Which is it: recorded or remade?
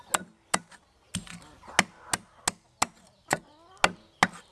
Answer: recorded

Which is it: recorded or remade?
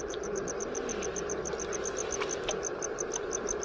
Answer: recorded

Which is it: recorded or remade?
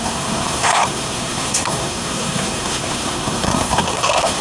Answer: remade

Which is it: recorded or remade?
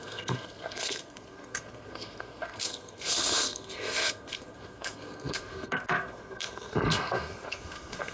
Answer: remade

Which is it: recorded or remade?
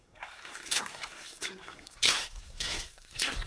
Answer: remade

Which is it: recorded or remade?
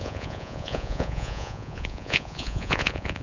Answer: remade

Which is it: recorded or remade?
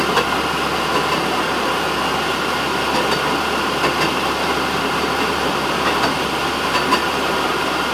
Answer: recorded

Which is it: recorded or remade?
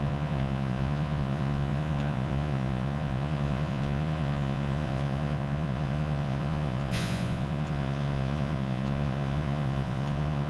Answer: remade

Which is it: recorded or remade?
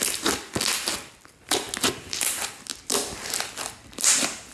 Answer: recorded